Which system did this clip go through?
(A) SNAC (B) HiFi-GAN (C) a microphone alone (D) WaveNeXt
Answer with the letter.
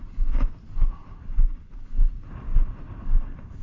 C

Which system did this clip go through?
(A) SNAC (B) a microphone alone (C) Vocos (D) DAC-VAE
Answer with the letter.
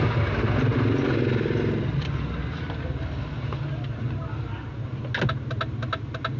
B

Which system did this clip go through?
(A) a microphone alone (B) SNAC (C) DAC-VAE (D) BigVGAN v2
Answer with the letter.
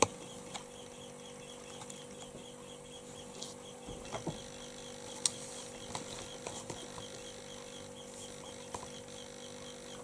A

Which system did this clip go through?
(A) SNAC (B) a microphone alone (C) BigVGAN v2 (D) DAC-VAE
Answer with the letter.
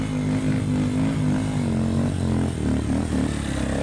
B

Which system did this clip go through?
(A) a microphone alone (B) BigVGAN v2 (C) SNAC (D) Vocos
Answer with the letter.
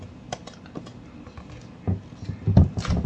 A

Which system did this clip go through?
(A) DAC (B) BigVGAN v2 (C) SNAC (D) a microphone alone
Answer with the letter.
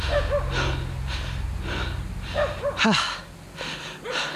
D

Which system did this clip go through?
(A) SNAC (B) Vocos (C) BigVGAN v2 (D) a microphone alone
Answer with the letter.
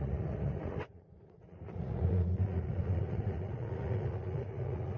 B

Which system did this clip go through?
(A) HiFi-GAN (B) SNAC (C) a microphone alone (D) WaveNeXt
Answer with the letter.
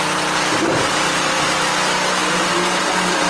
C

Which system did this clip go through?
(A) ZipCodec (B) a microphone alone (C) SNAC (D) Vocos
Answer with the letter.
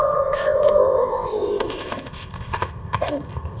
A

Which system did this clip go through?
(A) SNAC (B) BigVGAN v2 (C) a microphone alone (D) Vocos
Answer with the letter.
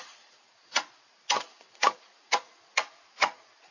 D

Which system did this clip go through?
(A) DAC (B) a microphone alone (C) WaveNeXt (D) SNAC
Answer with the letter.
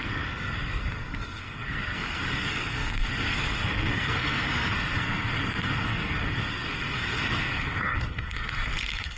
D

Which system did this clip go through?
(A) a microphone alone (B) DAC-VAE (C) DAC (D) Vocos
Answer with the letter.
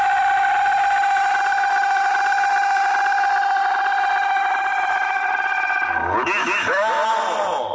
A